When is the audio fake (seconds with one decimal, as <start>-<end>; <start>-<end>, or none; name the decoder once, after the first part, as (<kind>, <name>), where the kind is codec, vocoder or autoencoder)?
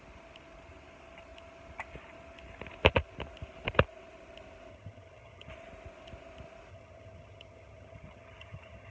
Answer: 4.7-5.5 (vocoder, HiFi-GAN); 6.7-8.9